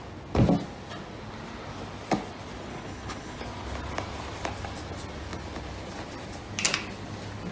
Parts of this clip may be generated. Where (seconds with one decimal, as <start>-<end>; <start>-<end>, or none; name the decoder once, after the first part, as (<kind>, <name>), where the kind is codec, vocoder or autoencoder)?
2.7-3.4 (codec, HILCodec)